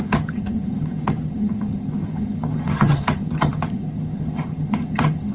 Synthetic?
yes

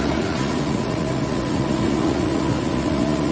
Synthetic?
yes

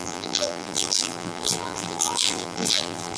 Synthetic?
yes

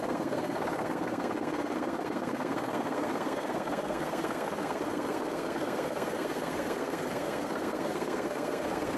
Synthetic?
yes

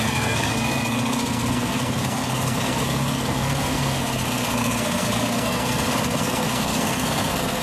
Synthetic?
yes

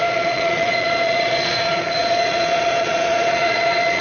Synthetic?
yes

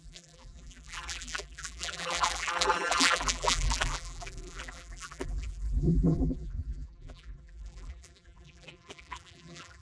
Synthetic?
yes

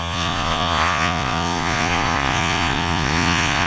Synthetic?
yes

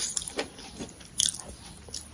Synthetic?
yes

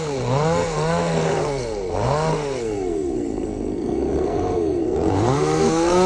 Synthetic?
yes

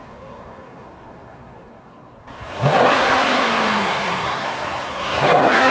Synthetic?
yes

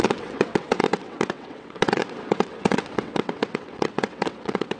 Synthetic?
yes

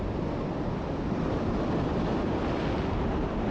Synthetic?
no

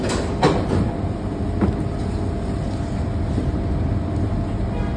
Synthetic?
no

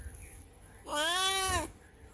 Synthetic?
no